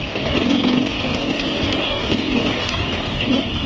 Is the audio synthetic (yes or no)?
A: yes